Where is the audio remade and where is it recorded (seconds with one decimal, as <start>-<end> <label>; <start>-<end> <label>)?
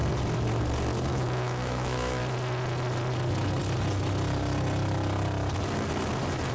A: 0.0-1.1 recorded; 1.1-2.2 remade; 2.2-6.5 recorded